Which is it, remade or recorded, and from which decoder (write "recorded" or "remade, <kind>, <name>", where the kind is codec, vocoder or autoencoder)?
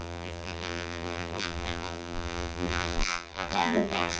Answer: remade, vocoder, BigVGAN v2